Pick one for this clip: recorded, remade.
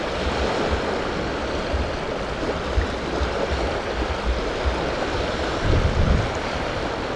recorded